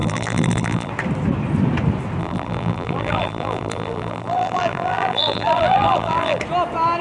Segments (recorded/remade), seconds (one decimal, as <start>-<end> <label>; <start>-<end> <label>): 0.0-0.9 remade; 0.9-2.2 recorded; 2.2-6.4 remade; 6.4-7.0 recorded